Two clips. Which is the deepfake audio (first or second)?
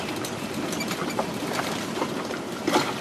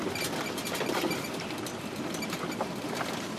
first